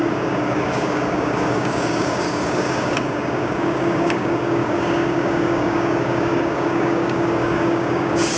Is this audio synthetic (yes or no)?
yes